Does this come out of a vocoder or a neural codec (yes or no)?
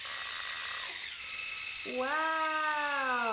no